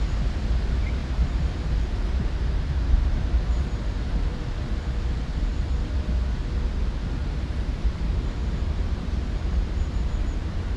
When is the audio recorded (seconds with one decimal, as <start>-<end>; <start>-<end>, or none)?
0.0-1.0; 4.5-7.2; 9.5-10.8

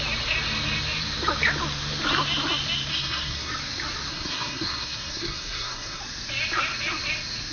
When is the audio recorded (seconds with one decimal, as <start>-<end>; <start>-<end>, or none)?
0.0-2.9; 3.5-4.1; 6.0-7.5

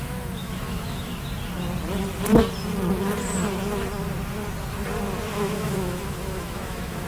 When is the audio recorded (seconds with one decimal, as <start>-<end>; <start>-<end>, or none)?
1.1-5.3

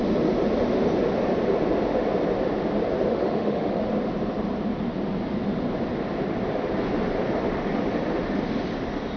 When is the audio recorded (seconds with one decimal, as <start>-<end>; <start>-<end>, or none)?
0.0-3.1; 3.8-9.2